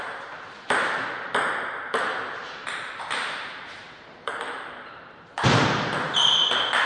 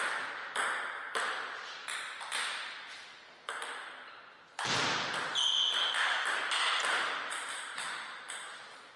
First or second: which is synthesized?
first